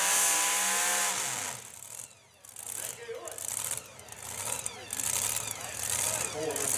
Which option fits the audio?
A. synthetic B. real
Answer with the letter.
B